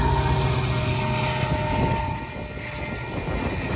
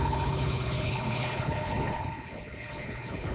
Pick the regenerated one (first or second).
second